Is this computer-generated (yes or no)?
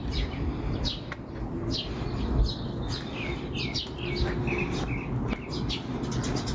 no